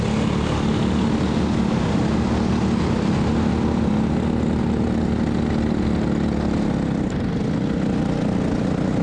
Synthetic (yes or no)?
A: no